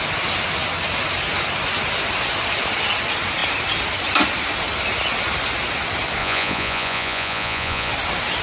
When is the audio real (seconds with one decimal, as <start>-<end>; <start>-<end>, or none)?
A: 0.0-6.2; 7.9-8.4